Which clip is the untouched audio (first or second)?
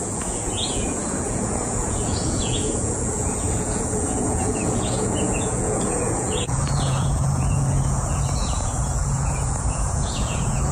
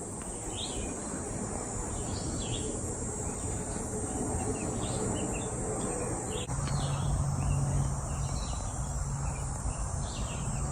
second